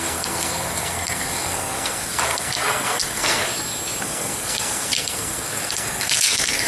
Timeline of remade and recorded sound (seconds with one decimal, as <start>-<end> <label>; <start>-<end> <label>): 0.0-3.5 remade; 3.5-4.0 recorded; 4.0-6.7 remade